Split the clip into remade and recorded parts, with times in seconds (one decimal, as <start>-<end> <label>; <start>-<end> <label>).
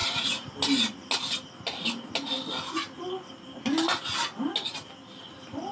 0.0-5.7 recorded